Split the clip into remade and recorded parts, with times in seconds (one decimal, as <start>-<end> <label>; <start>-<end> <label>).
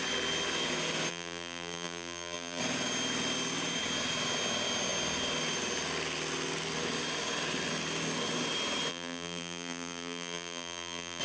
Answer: 0.0-1.1 recorded; 1.1-2.6 remade; 2.6-8.9 recorded; 8.9-11.2 remade